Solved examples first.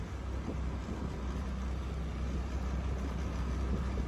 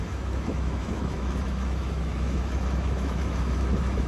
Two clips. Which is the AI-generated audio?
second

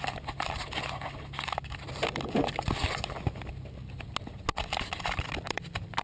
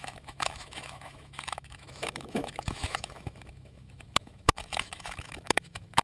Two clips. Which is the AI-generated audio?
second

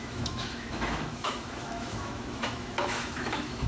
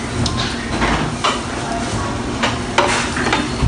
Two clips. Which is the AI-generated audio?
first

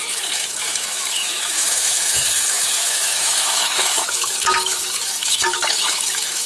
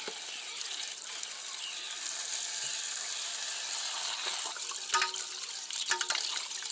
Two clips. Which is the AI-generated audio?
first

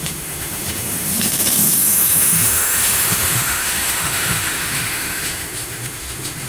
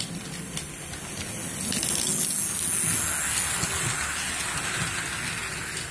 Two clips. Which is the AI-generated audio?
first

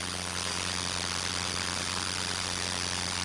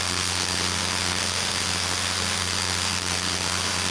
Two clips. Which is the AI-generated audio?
second